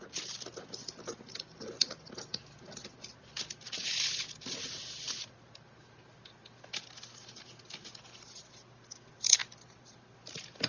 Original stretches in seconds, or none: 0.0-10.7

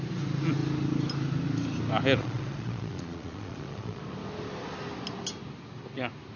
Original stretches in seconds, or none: 0.0-2.2; 4.0-6.4

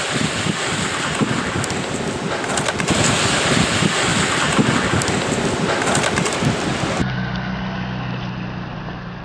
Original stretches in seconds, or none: 0.0-9.2

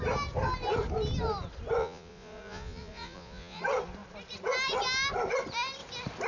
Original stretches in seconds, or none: 0.0-1.8; 3.6-6.3

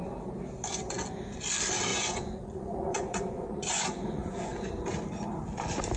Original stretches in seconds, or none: 0.0-1.9; 4.7-6.0

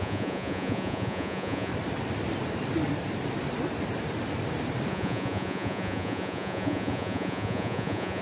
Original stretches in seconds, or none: 1.7-4.9

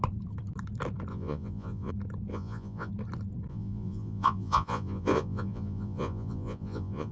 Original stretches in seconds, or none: 0.0-1.1; 1.9-2.3; 2.9-3.5

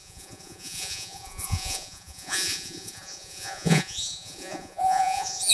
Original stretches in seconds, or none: none